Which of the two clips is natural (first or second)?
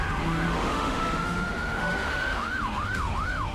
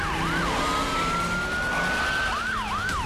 second